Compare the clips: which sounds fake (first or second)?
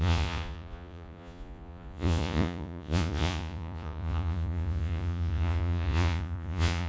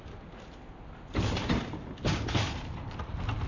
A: first